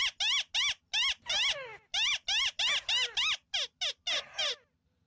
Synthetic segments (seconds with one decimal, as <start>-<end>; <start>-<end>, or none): none